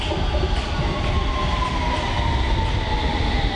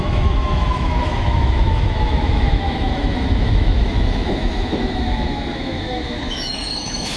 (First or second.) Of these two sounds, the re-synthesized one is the second